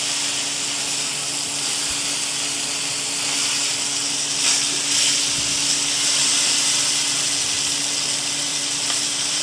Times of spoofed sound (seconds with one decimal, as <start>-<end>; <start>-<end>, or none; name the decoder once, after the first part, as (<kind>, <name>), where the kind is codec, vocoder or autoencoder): 8.5-9.4 (vocoder, BigVGAN v2)